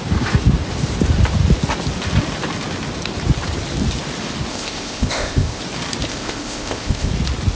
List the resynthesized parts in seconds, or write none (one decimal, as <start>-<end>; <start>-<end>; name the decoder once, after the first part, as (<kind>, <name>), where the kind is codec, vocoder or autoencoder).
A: 4.5-5.6 (codec, ZipCodec); 6.1-7.1